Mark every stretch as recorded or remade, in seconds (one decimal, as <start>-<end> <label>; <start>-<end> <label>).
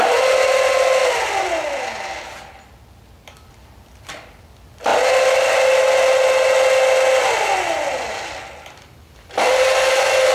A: 0.0-10.3 recorded